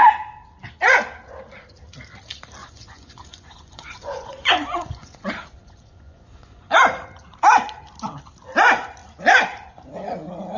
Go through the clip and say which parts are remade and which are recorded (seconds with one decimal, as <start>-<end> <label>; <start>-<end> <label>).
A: 0.0-2.6 recorded; 2.6-6.8 remade; 6.8-10.6 recorded